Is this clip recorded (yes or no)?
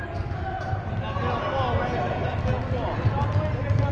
yes